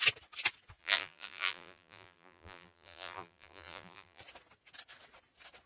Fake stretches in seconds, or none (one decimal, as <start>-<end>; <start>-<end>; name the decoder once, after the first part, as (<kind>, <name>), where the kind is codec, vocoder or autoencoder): 0.8-4.2 (vocoder, BigVGAN v2)